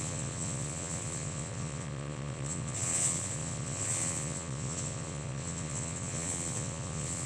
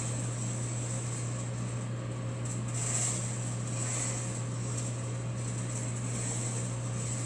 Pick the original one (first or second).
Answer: second